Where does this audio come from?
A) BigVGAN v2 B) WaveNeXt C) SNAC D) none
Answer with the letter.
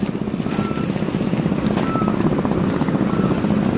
D